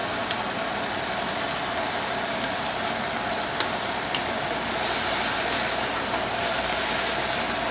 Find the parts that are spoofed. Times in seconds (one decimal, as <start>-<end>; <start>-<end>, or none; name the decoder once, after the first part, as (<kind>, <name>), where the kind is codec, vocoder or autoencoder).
none